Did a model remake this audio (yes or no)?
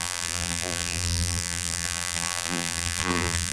yes